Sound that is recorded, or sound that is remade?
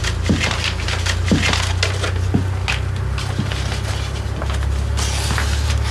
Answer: recorded